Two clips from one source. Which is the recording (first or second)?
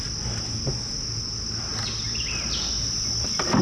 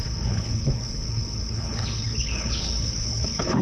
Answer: first